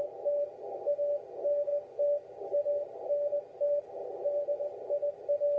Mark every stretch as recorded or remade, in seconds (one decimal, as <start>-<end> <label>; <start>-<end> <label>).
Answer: 0.0-5.6 recorded